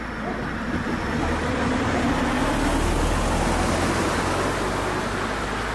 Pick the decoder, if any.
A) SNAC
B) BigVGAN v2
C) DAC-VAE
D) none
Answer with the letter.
D